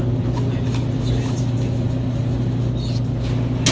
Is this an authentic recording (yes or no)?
yes